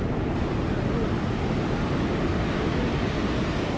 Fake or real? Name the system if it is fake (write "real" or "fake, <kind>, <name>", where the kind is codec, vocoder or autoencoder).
real